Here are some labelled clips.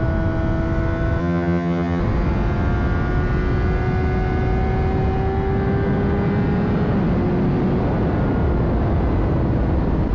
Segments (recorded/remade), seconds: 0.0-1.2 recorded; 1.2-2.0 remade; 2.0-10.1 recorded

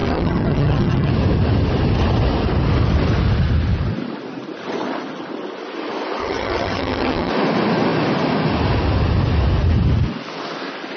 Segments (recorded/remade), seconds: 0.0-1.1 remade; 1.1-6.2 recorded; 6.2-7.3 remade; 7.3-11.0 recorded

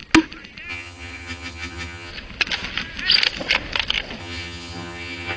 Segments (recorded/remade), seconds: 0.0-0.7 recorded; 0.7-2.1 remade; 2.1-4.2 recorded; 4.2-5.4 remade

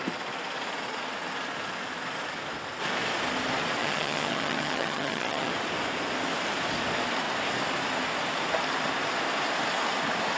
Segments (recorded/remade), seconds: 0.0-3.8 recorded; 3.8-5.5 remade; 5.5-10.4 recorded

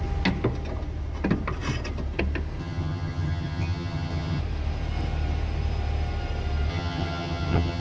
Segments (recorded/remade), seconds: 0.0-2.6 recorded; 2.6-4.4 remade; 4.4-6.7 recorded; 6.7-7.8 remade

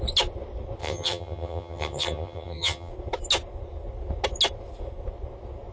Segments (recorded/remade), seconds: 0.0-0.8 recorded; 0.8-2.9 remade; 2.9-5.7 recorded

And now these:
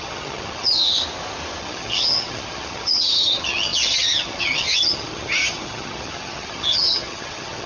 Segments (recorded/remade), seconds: 0.0-0.9 remade; 0.9-1.6 recorded; 1.6-7.7 remade

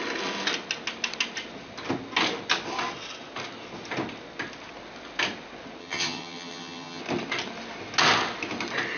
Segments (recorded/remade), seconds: 0.0-5.8 recorded; 5.8-7.0 remade; 7.0-9.0 recorded